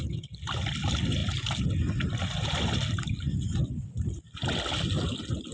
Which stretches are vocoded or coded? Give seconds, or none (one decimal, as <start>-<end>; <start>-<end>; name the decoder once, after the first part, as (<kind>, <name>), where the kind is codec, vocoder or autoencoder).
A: none